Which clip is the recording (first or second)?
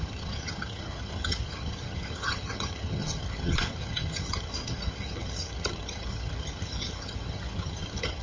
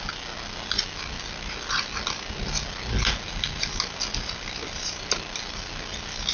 second